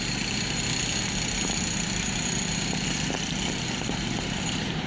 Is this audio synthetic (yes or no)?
no